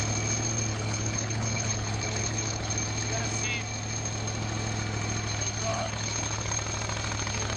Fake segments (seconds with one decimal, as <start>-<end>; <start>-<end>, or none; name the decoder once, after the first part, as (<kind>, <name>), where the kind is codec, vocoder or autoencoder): 0.7-2.7 (codec, HILCodec); 5.7-6.5